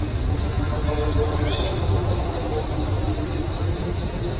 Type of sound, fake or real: real